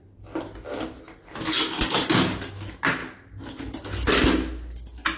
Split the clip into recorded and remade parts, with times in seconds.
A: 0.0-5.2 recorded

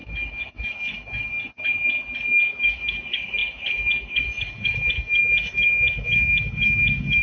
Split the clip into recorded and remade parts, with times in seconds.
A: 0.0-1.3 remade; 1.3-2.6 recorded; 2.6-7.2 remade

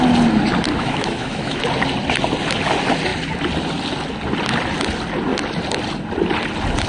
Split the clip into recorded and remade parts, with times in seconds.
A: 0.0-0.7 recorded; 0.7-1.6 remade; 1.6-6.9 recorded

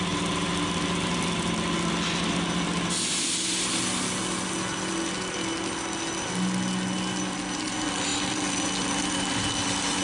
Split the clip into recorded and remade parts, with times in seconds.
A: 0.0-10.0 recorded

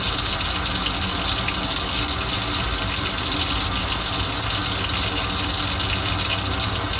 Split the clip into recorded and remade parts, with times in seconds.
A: 0.0-7.0 recorded

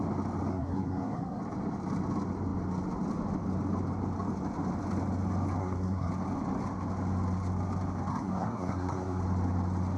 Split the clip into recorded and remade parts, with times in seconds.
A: 0.0-0.5 recorded; 0.5-1.4 remade; 1.4-5.6 recorded; 5.6-6.1 remade; 6.1-8.1 recorded; 8.1-9.2 remade; 9.2-10.0 recorded